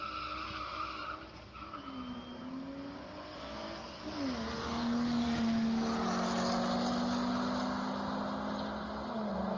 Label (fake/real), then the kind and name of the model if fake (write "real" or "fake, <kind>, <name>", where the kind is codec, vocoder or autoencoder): real